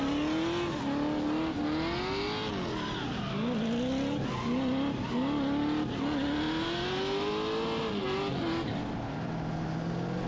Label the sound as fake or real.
real